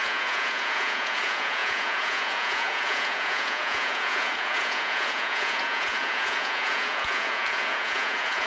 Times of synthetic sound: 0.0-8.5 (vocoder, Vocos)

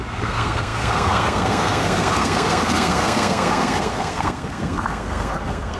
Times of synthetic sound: 0.0-5.8 (codec, SNAC)